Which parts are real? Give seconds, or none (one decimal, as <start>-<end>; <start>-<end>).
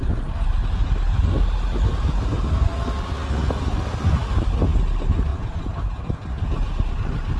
0.0-5.3; 6.0-7.4